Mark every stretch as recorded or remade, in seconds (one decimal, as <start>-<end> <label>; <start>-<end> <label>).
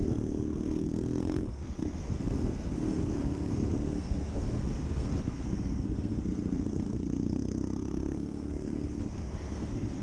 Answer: 0.0-10.0 remade